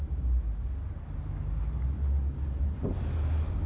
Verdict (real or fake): real